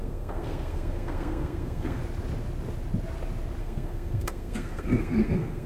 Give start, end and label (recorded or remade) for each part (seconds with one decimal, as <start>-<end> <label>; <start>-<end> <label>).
0.0-2.0 remade; 2.0-3.6 recorded; 3.6-5.7 remade